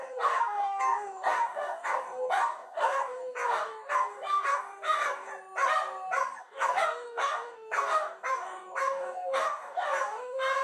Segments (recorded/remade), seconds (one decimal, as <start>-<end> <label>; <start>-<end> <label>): 0.0-5.3 remade; 5.3-6.4 recorded; 6.4-10.6 remade